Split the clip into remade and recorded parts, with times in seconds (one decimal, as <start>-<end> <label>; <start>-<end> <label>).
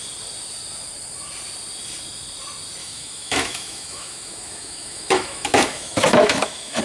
0.0-2.8 recorded; 2.8-6.8 remade